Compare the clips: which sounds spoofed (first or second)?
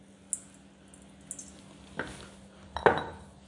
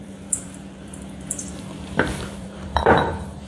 second